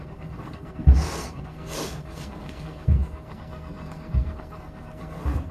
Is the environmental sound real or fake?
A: fake